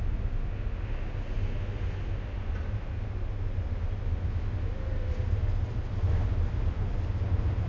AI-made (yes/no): no